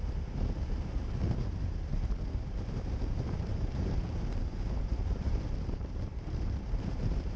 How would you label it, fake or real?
fake